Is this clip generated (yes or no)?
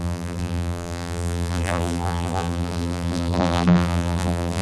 yes